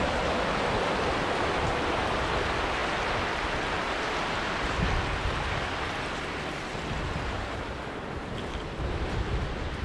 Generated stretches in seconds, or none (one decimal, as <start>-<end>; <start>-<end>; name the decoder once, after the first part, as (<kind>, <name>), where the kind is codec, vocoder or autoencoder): none